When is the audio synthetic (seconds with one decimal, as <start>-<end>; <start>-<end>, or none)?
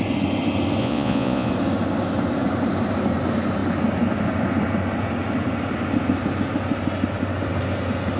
0.8-1.5